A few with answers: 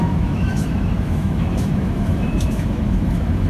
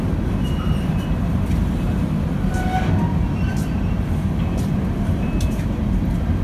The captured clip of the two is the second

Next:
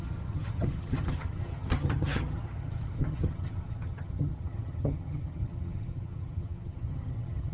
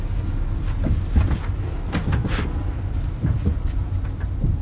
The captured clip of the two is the second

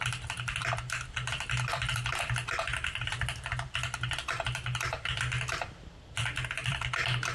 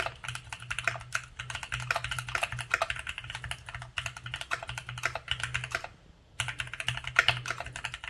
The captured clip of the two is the second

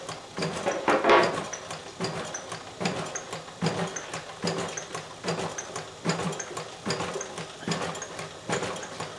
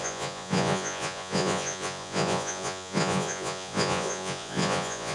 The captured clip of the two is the first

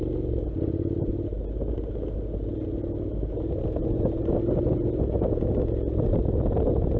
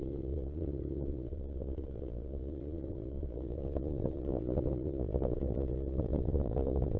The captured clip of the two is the first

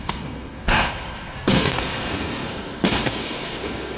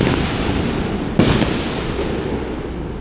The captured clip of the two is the second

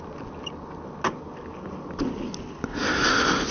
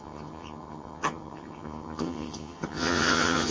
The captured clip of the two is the first